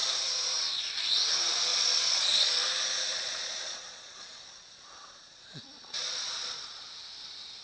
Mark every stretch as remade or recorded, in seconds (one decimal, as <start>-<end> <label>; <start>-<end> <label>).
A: 0.0-1.7 recorded; 1.7-2.6 remade; 2.6-3.1 recorded; 3.1-6.8 remade; 6.8-7.6 recorded